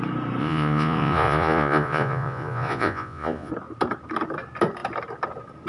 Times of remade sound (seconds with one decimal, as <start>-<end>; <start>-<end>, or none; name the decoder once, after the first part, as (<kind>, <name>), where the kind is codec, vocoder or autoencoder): 0.4-3.5 (vocoder, Vocos)